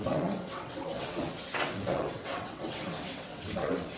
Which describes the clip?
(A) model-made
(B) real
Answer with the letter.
A